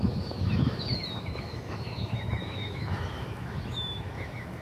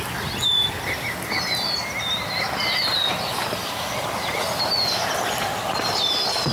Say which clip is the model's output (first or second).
first